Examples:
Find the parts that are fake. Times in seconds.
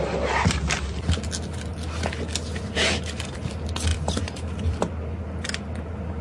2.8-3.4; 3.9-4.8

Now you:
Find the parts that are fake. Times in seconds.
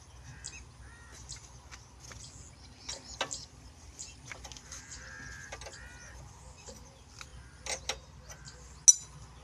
none